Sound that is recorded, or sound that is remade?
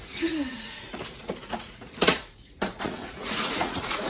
remade